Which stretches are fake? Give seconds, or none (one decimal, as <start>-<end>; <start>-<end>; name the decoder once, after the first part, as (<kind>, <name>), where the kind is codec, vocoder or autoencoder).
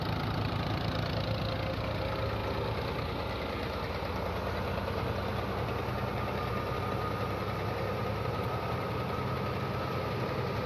none